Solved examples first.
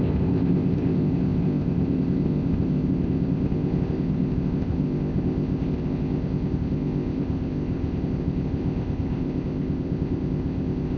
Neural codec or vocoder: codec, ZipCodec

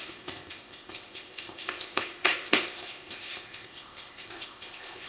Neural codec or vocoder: codec, ZipCodec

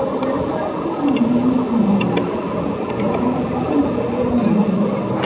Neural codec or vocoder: none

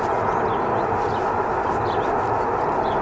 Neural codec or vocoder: none